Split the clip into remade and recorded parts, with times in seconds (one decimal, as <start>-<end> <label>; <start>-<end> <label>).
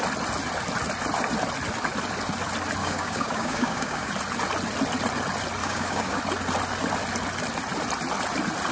0.0-2.8 recorded; 2.8-4.1 remade; 4.1-5.6 recorded; 5.6-6.2 remade; 6.2-8.7 recorded